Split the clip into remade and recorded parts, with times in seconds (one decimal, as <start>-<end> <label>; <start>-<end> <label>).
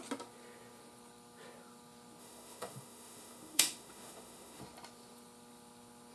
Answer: 0.0-2.2 recorded; 2.2-4.6 remade; 4.6-6.1 recorded